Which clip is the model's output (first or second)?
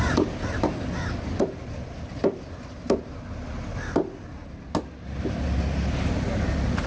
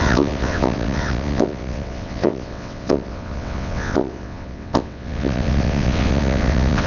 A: second